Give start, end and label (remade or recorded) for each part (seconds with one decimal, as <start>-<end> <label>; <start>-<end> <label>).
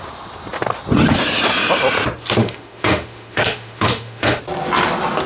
0.0-2.4 recorded; 2.4-4.4 remade; 4.4-5.3 recorded